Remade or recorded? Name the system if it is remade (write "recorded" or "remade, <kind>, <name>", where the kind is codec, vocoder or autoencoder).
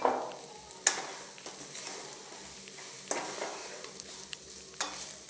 recorded